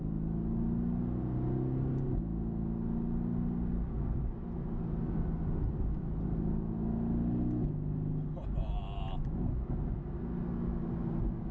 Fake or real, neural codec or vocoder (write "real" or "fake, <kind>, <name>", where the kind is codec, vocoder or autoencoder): real